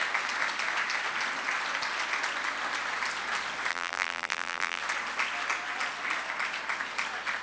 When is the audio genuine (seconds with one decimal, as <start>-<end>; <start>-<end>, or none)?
0.0-3.7; 4.8-7.4